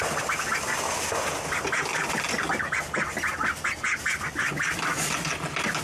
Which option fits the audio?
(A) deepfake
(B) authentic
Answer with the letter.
B